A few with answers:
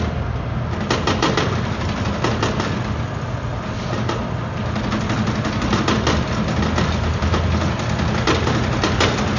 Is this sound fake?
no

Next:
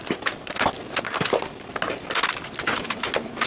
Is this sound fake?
no